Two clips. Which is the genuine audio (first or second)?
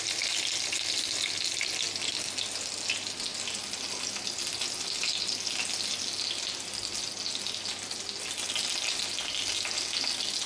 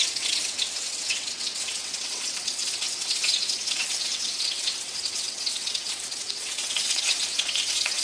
first